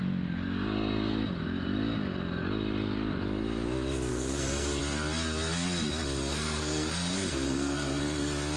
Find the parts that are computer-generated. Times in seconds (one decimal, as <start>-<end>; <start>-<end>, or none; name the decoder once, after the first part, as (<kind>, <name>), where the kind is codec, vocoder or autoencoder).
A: 4.1-4.8 (codec, SNAC); 6.3-8.0